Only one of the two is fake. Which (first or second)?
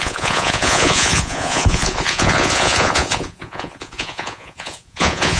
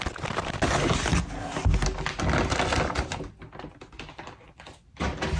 first